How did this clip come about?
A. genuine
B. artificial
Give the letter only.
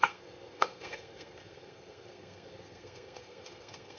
B